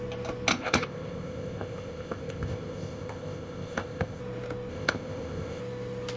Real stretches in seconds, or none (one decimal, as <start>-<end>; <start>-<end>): 0.0-0.5; 4.2-4.7; 5.6-6.2